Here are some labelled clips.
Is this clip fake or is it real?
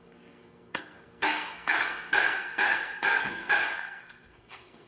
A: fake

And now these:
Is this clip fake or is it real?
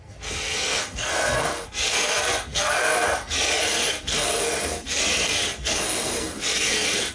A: fake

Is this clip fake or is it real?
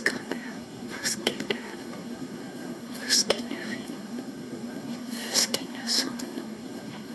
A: fake